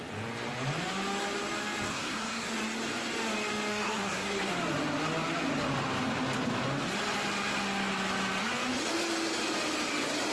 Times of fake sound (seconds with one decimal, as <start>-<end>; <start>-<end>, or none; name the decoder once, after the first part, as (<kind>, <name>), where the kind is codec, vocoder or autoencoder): 1.9-2.5 (codec, SNAC); 3.7-4.5